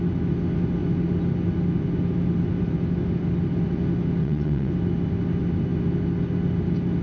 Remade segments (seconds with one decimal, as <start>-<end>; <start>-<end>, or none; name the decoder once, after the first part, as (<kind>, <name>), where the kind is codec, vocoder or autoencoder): 4.2-4.7 (vocoder, WaveNeXt)